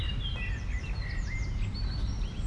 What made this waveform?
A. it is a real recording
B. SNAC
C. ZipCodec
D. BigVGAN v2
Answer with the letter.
A